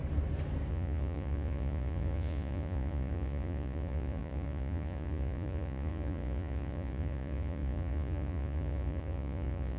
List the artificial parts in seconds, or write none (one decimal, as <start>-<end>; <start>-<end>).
0.7-9.8